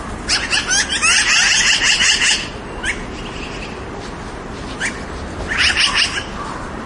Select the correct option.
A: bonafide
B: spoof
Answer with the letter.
A